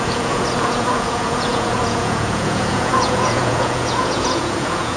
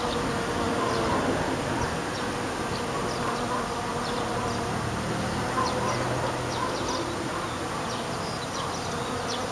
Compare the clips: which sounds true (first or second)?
second